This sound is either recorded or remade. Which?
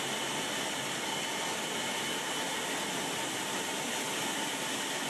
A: recorded